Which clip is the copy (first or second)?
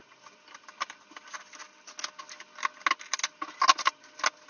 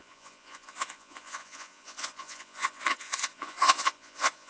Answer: second